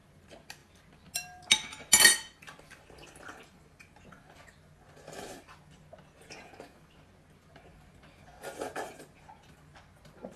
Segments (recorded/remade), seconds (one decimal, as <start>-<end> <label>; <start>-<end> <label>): 0.0-10.4 recorded